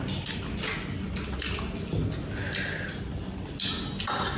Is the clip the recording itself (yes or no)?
yes